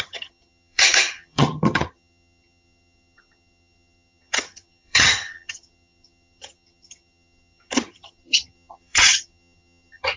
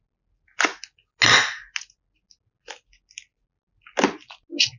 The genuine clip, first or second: second